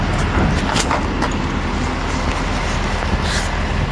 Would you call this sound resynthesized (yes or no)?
no